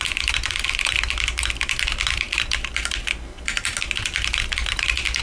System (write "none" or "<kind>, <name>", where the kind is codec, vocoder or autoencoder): none